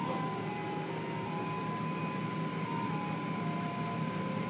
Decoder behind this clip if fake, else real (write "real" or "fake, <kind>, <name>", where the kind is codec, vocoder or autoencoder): real